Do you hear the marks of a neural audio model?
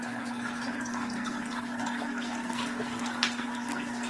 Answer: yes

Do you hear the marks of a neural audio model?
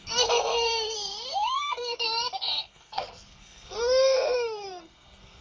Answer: yes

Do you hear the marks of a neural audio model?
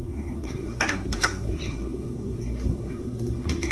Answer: yes